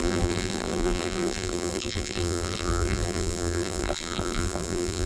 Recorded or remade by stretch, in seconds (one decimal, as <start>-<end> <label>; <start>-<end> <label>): 0.0-5.1 remade